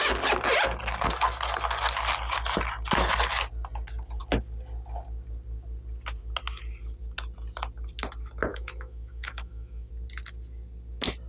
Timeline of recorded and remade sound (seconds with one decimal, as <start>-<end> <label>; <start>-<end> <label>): 0.0-8.5 recorded; 8.5-9.9 remade; 9.9-11.3 recorded